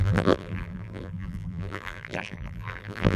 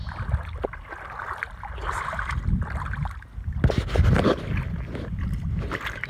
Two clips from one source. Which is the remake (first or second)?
first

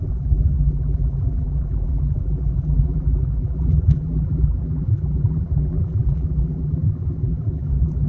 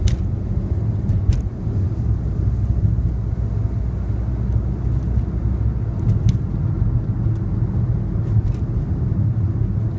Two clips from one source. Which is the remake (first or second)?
first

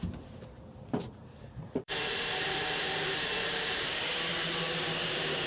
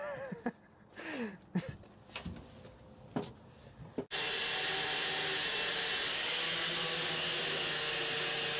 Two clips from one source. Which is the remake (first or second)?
first